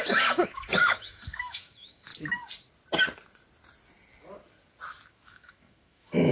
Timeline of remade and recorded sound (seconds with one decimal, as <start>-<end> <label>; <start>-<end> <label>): 0.0-2.1 remade; 2.1-5.1 recorded; 5.1-6.3 remade